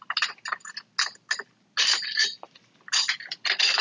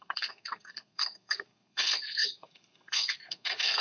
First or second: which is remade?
second